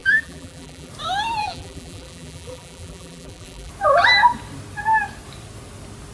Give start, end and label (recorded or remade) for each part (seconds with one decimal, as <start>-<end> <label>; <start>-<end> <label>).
0.0-0.9 remade; 0.9-1.4 recorded; 1.4-3.7 remade; 3.7-6.1 recorded